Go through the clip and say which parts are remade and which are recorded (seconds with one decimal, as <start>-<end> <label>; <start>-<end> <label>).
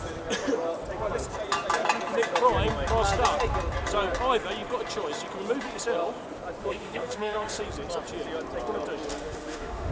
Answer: 0.0-6.6 recorded; 6.6-7.6 remade; 7.6-9.1 recorded; 9.1-9.9 remade